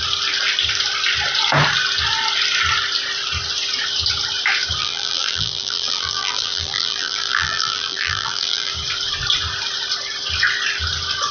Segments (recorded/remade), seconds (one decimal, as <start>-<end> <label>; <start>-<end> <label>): 0.0-4.8 recorded; 4.8-8.7 remade; 8.7-11.3 recorded